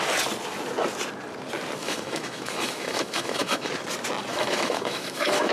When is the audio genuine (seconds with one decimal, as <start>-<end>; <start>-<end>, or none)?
0.0-1.8; 3.7-4.3